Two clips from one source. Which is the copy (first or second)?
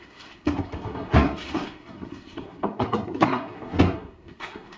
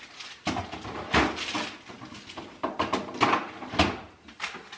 first